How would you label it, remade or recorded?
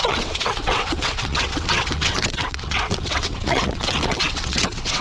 remade